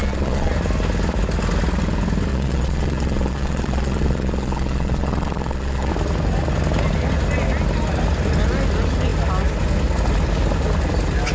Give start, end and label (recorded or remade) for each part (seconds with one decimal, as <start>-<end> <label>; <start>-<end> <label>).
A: 0.0-0.5 remade; 0.5-2.3 recorded; 2.3-5.9 remade; 5.9-11.3 recorded